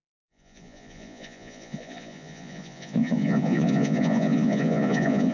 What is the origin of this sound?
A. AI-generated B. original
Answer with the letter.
A